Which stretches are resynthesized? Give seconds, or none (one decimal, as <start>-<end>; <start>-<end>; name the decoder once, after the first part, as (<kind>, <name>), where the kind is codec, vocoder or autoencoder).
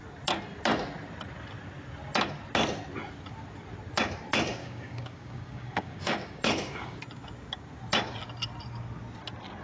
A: 4.6-7.0 (codec, DAC)